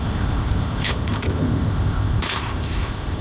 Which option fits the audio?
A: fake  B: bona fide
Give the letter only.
A